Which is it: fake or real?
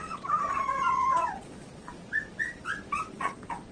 fake